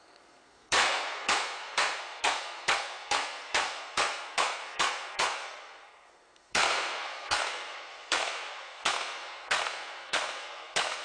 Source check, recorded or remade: remade